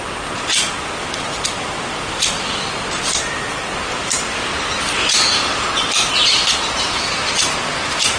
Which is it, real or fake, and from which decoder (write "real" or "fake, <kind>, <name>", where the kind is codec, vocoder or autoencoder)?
real